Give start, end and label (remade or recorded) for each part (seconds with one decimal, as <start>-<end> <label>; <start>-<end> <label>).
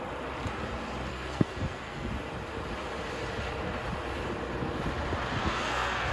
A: 0.0-1.1 recorded; 1.1-2.1 remade; 2.1-5.4 recorded; 5.4-6.1 remade